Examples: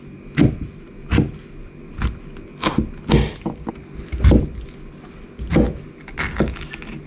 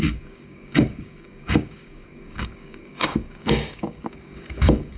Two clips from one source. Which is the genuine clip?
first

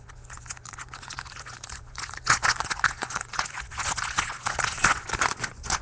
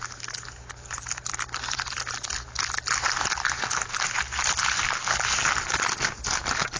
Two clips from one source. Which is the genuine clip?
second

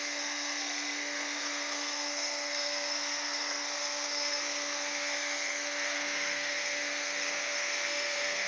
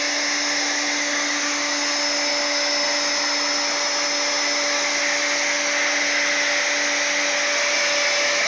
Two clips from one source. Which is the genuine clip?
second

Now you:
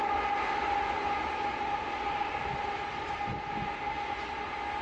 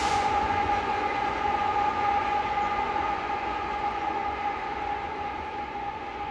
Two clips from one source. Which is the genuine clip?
first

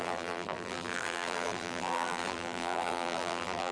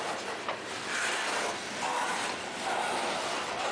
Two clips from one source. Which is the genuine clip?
second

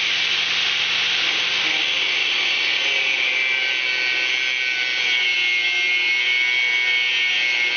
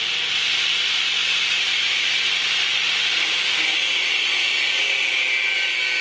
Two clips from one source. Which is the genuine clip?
first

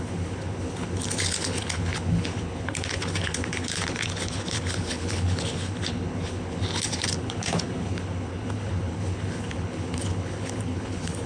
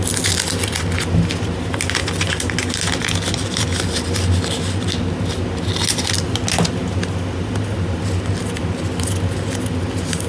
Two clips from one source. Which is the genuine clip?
second